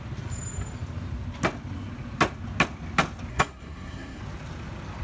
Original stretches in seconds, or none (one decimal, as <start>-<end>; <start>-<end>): 0.0-3.3; 4.2-5.0